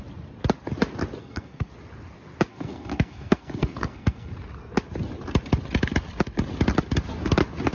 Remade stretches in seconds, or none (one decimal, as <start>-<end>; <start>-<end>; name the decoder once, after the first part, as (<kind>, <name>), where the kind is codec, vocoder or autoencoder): 1.2-1.7 (codec, SNAC); 2.5-4.3